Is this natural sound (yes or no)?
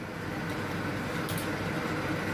yes